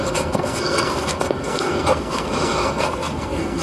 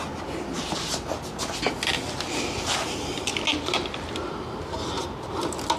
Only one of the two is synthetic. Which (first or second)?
first